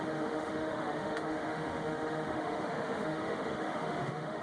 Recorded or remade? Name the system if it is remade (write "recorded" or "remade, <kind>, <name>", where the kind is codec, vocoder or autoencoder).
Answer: remade, autoencoder, DAC-VAE